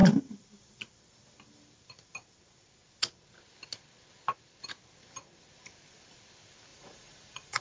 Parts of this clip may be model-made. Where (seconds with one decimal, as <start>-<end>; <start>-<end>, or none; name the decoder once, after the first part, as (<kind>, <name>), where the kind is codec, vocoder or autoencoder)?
6.7-7.6 (vocoder, Vocos)